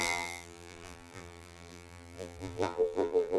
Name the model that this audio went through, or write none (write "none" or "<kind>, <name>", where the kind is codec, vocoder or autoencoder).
vocoder, BigVGAN v2